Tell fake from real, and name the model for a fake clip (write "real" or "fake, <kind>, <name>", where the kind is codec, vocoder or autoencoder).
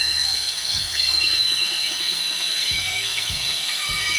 fake, codec, SNAC